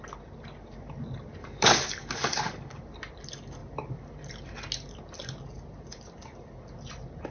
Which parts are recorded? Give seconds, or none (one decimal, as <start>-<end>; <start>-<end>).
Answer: 0.0-1.4; 2.8-7.3